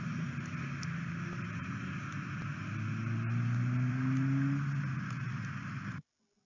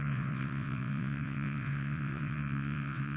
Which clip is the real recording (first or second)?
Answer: first